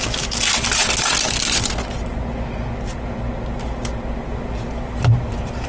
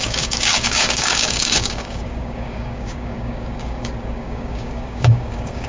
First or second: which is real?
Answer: first